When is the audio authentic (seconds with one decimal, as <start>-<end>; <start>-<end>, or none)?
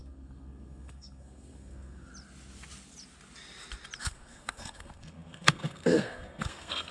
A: 2.1-4.0